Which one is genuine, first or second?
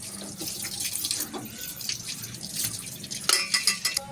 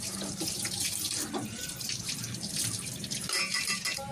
first